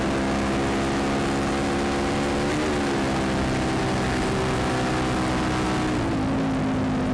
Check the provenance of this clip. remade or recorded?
recorded